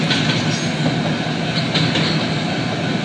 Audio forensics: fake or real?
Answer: real